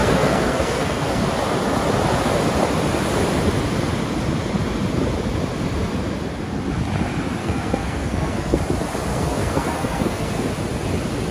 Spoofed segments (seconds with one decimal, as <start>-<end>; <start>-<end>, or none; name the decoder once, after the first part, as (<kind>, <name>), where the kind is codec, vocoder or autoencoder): 0.0-1.2 (codec, SNAC); 7.4-8.6; 9.1-10.5

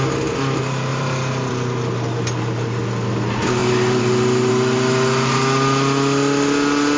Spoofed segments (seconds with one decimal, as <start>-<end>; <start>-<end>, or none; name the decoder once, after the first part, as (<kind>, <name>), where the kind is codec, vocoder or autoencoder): 0.9-1.5 (vocoder, BigVGAN v2)

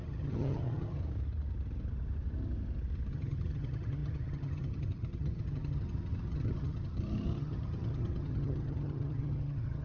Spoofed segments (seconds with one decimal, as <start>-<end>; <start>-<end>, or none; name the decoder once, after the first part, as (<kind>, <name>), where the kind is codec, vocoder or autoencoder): 0.0-1.0 (vocoder, HiFi-GAN); 3.1-9.8

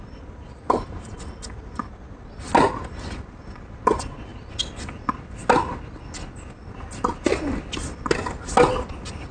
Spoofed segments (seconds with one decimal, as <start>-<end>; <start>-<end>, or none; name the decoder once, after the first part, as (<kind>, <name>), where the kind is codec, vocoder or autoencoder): none

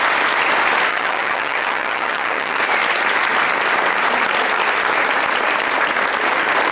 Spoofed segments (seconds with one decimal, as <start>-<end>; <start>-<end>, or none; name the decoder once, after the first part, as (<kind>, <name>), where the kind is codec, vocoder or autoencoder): 0.9-2.6 (vocoder, HiFi-GAN)